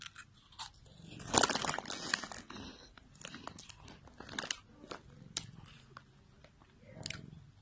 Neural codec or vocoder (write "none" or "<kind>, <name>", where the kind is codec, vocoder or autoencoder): none